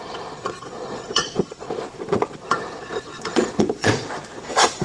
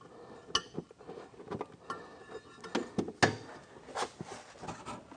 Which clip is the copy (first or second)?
first